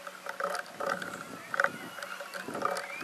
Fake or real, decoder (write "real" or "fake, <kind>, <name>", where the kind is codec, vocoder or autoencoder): real